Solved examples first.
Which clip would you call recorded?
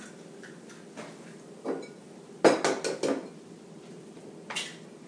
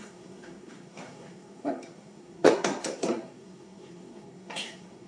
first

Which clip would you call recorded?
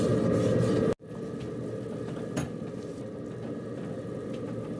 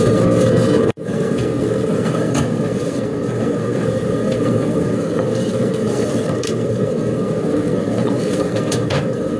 first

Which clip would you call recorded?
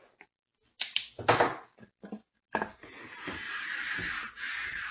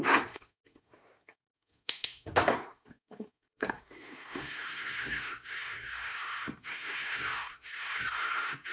first